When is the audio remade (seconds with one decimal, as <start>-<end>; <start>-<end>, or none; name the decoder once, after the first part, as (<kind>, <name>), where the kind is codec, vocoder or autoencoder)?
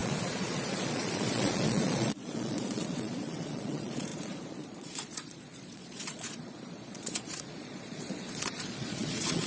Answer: 0.0-9.5 (vocoder, Vocos)